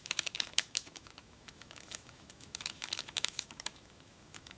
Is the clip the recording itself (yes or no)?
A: no